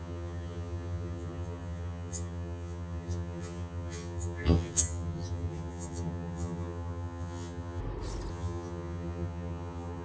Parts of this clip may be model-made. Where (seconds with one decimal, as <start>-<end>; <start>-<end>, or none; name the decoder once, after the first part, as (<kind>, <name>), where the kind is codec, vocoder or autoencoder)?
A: 0.0-7.8 (vocoder, HiFi-GAN); 8.3-10.0